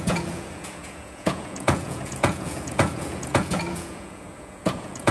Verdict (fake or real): fake